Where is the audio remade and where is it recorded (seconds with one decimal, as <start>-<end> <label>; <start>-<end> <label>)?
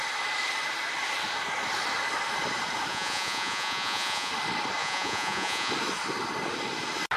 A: 0.0-2.9 recorded; 2.9-4.3 remade; 4.3-4.8 recorded; 4.8-5.7 remade; 5.7-7.2 recorded